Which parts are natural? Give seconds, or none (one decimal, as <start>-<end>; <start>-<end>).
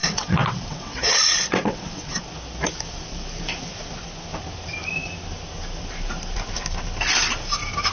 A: 2.2-7.9